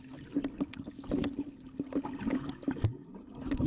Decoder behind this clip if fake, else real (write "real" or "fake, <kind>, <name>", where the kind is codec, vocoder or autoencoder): real